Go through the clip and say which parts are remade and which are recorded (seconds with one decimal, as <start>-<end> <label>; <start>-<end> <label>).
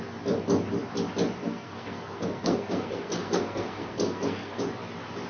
0.0-1.4 recorded; 1.4-4.6 remade; 4.6-5.3 recorded